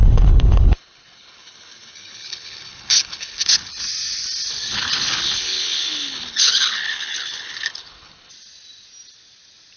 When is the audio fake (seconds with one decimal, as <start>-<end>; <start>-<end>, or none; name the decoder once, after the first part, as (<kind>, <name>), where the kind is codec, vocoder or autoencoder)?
0.0-3.8 (codec, HILCodec); 4.5-8.3